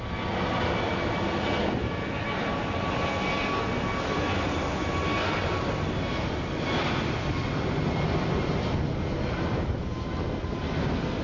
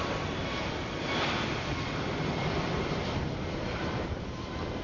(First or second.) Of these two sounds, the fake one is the second